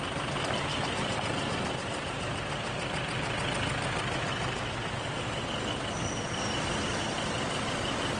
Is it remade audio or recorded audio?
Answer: recorded